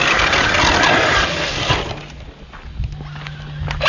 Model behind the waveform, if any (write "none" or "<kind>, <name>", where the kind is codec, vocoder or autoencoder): none